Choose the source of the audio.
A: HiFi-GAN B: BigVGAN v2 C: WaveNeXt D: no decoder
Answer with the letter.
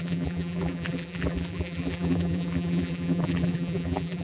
B